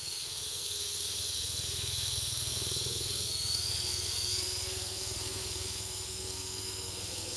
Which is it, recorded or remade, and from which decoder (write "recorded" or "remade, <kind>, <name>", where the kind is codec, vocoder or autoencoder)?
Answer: remade, codec, SNAC